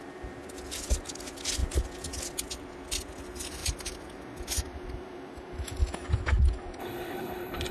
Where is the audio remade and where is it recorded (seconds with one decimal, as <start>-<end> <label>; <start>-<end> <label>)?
0.0-6.8 recorded; 6.8-7.7 remade